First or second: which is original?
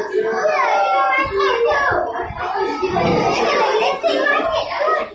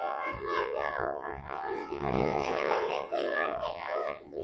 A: first